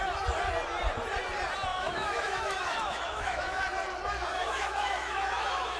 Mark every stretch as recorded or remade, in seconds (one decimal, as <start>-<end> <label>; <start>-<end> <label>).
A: 0.0-1.7 recorded; 1.7-3.6 remade; 3.6-4.3 recorded; 4.3-5.8 remade